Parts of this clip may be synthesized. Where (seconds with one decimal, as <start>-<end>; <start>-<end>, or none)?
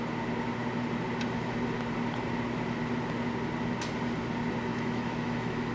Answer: 4.7-5.7